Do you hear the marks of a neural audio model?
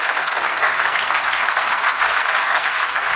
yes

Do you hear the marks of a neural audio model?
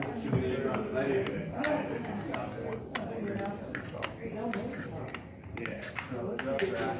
no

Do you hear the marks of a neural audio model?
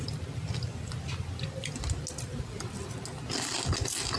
no